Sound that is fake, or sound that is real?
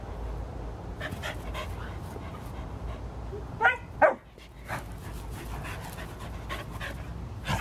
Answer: real